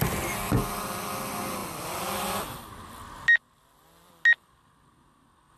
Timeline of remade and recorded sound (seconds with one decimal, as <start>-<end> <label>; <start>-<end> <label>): 0.0-5.6 recorded